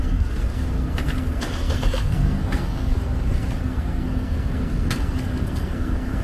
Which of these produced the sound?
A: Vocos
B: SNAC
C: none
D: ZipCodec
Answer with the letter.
B